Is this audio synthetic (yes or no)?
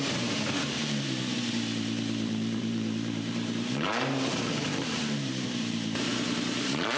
yes